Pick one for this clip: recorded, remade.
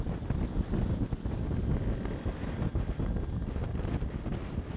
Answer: recorded